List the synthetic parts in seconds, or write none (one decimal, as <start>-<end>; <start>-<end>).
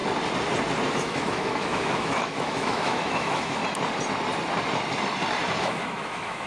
0.9-3.6; 5.6-6.5